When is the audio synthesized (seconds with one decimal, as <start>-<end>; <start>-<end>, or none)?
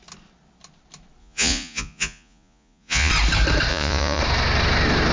1.2-3.1; 3.7-4.2